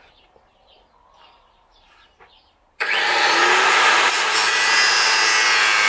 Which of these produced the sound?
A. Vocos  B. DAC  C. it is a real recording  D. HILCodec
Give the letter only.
C